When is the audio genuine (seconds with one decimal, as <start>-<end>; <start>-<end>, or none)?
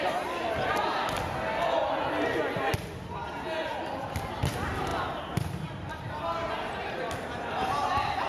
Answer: 0.0-8.3